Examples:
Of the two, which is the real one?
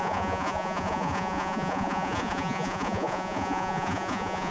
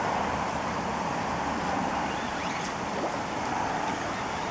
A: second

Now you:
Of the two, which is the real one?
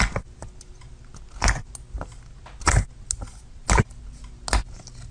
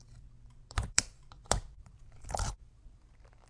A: first